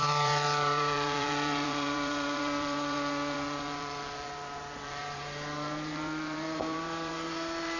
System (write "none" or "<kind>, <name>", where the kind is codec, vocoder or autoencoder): vocoder, BigVGAN v2